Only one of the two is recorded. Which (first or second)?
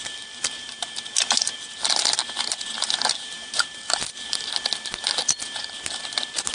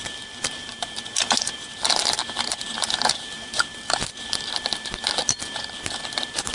first